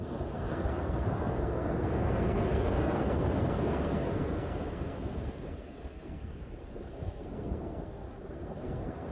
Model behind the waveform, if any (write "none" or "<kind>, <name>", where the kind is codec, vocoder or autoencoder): codec, SNAC